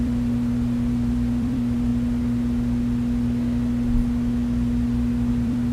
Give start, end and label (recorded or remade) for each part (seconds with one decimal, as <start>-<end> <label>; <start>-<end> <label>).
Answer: 0.0-1.9 remade; 1.9-5.3 recorded; 5.3-5.7 remade